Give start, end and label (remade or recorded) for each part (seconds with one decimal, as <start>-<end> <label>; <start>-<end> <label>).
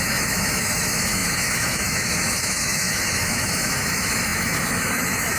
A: 0.0-5.4 remade